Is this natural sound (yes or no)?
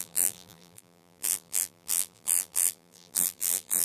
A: no